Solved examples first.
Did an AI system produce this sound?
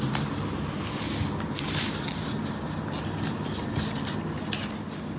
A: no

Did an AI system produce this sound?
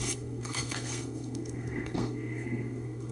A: yes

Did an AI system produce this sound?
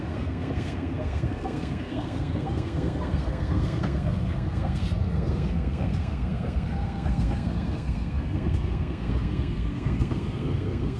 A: yes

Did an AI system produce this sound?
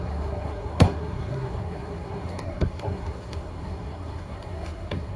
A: yes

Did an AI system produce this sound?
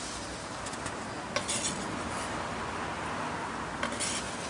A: no